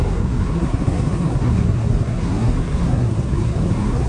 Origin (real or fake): fake